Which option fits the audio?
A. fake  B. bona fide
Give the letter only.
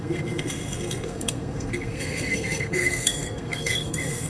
A